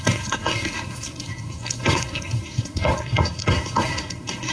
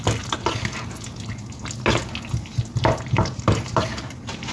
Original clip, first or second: second